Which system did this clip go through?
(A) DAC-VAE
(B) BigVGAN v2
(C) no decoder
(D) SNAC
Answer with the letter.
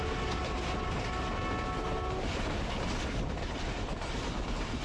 C